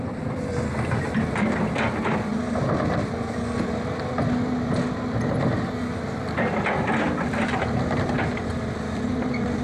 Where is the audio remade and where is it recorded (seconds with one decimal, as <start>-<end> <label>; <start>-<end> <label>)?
0.0-2.3 remade; 2.3-6.7 recorded; 6.7-9.6 remade